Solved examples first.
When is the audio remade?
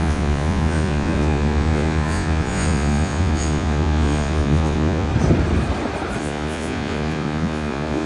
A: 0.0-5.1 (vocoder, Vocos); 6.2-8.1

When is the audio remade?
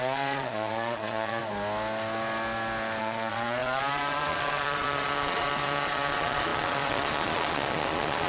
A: 0.0-1.4 (vocoder, Vocos); 3.0-8.3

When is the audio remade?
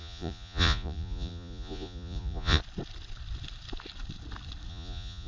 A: 0.0-2.6 (vocoder, Vocos); 4.7-5.3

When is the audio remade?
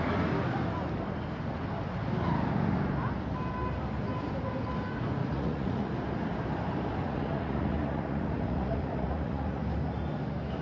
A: 5.2-5.9 (vocoder, Vocos); 7.0-9.6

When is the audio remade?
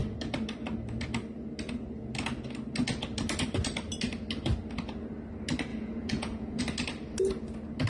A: 5.7-6.6 (vocoder, Vocos)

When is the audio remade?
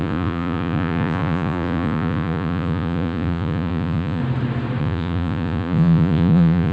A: 0.0-4.2 (vocoder, Vocos); 4.8-6.7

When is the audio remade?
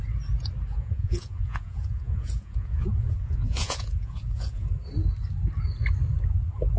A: 0.7-4.7 (vocoder, Vocos)